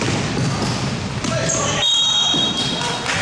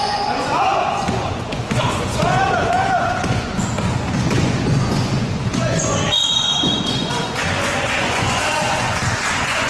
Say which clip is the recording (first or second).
first